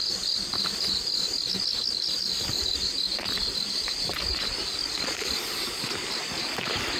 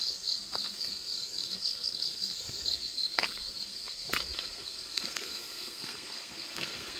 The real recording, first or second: first